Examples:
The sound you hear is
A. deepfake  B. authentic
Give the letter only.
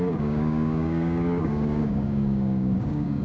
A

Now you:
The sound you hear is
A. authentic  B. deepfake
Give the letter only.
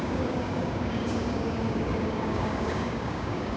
B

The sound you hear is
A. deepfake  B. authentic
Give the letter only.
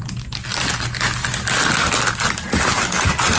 B